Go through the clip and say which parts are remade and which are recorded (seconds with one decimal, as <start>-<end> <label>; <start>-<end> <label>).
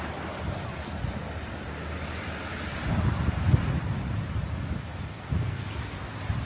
0.0-5.1 recorded; 5.1-5.7 remade; 5.7-6.4 recorded